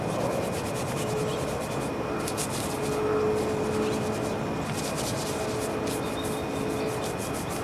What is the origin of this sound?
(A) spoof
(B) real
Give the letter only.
B